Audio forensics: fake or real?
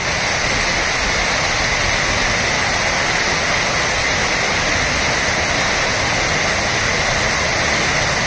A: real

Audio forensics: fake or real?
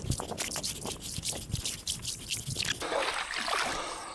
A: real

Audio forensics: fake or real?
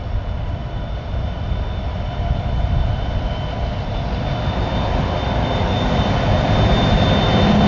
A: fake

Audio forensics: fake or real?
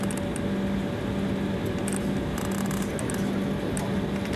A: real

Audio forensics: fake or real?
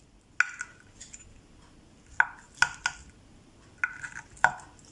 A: real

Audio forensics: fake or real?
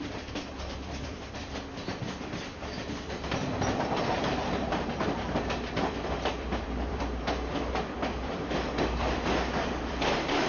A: fake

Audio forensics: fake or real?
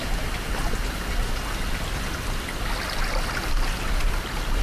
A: real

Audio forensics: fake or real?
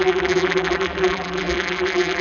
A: fake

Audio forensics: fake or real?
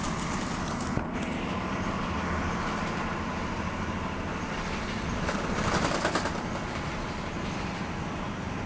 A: fake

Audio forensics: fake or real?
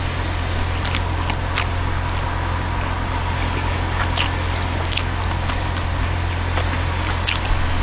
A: real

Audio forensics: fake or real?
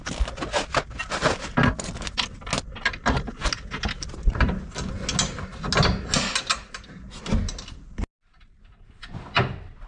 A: real